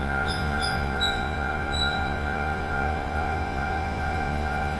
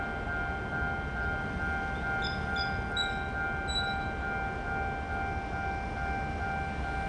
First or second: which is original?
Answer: second